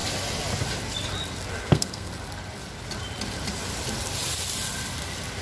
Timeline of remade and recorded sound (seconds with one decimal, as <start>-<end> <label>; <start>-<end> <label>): 0.0-1.6 recorded; 1.6-2.1 remade; 2.1-5.4 recorded